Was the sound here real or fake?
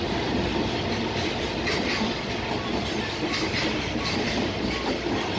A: real